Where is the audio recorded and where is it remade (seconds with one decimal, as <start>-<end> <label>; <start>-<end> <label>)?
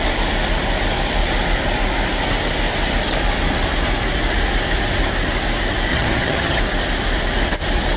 0.0-5.9 recorded; 5.9-6.6 remade; 6.6-8.0 recorded